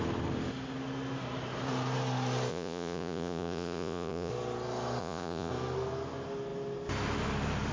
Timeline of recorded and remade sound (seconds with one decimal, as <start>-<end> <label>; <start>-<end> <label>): 0.0-2.5 recorded; 2.5-4.3 remade; 4.3-5.0 recorded; 5.0-5.5 remade; 5.5-7.7 recorded